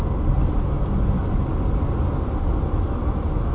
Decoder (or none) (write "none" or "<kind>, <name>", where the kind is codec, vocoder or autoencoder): none